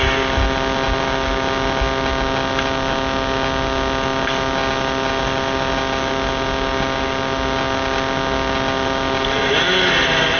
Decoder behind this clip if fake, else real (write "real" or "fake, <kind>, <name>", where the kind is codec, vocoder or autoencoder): real